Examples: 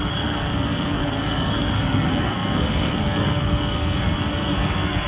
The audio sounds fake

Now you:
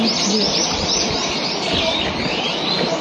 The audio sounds real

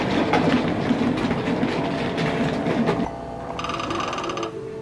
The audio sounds real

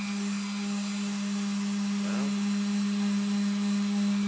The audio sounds real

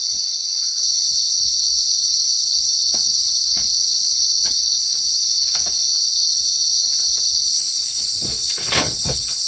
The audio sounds fake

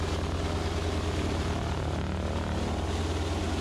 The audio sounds real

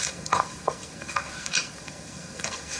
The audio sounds fake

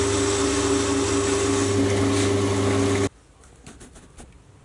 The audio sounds real